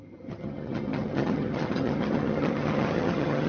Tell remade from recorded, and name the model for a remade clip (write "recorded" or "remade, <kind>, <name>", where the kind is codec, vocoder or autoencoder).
remade, vocoder, HiFi-GAN